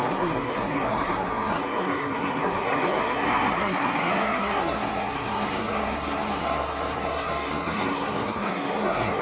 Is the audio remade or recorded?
remade